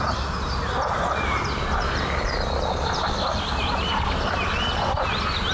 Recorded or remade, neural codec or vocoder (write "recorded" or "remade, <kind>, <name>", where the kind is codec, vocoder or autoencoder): recorded